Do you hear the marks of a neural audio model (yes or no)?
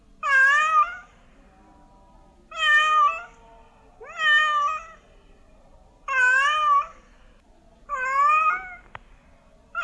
no